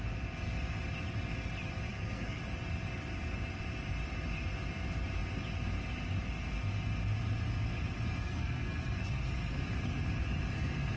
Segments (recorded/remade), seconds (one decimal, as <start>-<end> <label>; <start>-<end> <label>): 0.0-1.9 recorded; 1.9-2.4 remade; 2.4-8.2 recorded; 8.2-9.6 remade; 9.6-11.0 recorded